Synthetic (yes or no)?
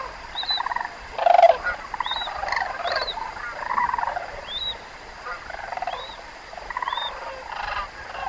yes